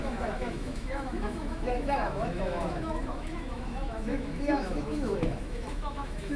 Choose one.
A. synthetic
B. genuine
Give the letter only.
A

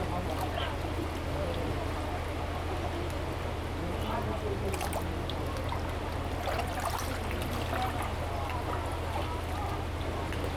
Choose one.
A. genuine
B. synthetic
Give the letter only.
A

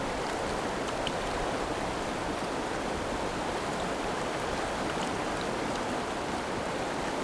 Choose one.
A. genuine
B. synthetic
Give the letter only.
A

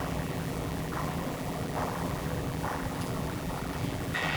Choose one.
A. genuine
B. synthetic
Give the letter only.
B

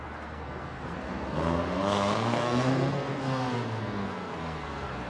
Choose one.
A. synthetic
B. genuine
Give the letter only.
A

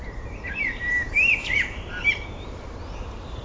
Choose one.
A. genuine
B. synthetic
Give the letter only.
B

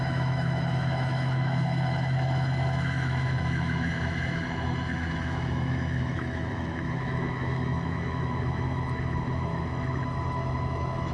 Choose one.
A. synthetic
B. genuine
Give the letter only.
A